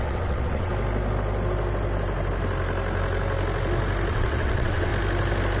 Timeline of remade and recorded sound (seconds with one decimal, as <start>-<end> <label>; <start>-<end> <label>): 0.0-0.7 remade; 0.7-4.1 recorded; 4.1-4.9 remade; 4.9-5.6 recorded